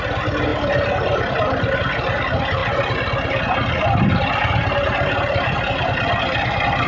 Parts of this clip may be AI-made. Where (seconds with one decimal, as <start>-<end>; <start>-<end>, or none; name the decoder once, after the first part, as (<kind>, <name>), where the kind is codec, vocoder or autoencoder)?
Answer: none